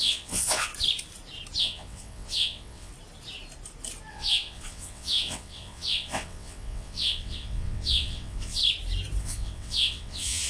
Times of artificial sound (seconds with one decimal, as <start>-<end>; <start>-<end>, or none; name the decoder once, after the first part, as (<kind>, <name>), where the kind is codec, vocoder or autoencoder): 0.0-0.7 (vocoder, WaveNeXt); 1.6-2.9; 4.1-8.6; 9.2-10.5